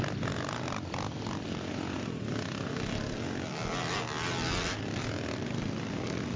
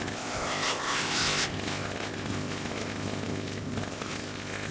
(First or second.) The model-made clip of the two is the second